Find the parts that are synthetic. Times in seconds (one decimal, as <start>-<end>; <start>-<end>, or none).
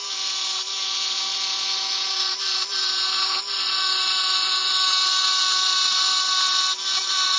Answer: none